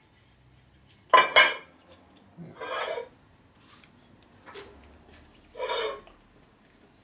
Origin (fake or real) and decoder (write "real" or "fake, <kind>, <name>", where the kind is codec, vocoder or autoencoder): real